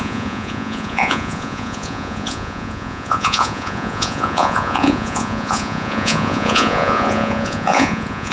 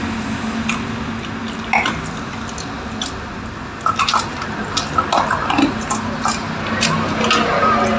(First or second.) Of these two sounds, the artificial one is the first